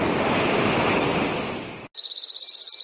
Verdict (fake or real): real